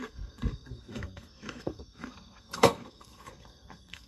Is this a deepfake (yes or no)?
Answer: yes